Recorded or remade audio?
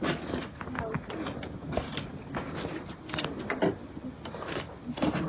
recorded